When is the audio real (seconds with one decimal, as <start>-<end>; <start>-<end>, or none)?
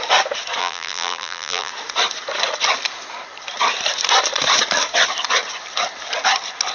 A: 0.0-0.6; 1.7-6.7